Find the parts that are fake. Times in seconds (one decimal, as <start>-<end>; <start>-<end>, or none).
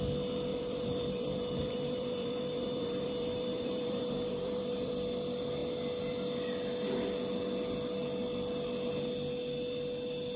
0.5-4.9